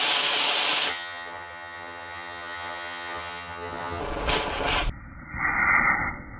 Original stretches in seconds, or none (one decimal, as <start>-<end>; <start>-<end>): 0.0-0.9; 4.0-6.4